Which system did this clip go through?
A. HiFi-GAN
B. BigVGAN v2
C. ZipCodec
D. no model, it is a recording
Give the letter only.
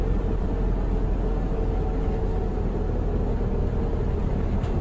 D